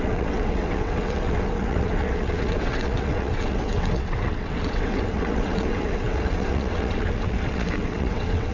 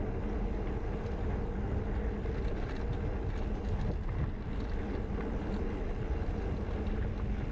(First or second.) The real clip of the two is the second